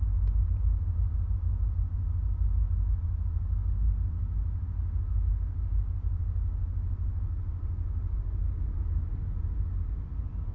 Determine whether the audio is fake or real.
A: real